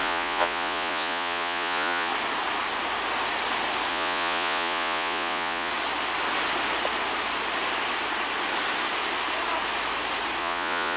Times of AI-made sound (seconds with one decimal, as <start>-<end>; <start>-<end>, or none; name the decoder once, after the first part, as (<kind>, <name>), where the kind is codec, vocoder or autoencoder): 0.0-2.1 (vocoder, Vocos); 3.9-5.7; 10.4-11.0

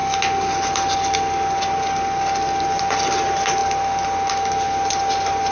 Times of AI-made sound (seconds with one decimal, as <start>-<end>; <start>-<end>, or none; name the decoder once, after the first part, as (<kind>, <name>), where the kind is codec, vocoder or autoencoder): none

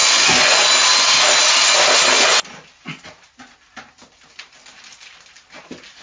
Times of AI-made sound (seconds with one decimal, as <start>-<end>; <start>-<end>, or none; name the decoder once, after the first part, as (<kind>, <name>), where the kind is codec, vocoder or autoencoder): 0.0-0.6 (vocoder, Vocos)

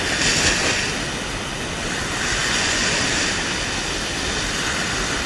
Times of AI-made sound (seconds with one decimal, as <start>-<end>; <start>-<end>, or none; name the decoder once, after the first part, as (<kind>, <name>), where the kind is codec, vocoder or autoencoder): 2.4-3.0 (vocoder, Vocos)

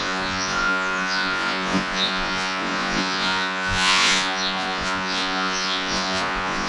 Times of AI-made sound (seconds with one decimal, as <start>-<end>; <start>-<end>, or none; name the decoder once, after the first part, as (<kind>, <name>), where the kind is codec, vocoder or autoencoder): 0.0-6.7 (vocoder, Vocos)

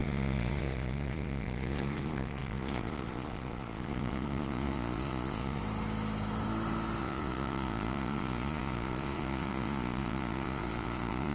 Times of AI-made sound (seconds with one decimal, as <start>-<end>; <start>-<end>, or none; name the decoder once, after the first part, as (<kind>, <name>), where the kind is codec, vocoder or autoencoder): 0.0-5.6 (vocoder, Vocos); 7.0-11.3

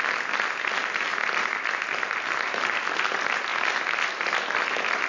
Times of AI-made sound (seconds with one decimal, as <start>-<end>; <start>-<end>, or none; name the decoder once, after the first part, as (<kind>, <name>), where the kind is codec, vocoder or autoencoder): none